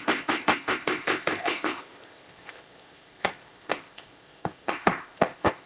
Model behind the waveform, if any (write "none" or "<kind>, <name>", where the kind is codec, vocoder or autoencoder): codec, ZipCodec